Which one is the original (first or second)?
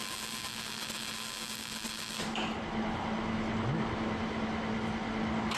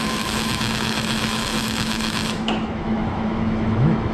first